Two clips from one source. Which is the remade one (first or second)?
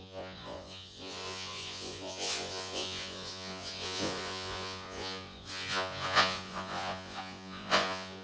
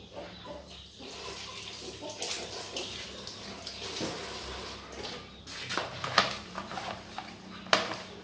first